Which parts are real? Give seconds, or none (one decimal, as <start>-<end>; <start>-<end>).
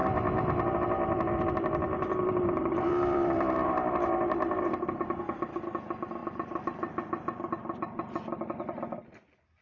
5.2-6.2; 8.6-9.6